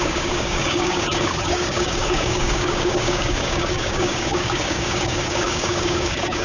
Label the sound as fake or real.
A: fake